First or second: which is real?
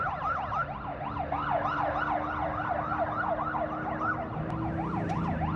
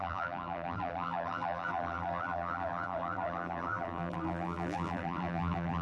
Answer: first